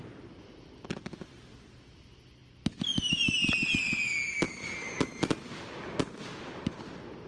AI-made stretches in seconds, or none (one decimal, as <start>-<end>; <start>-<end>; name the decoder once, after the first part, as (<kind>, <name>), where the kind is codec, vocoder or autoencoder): none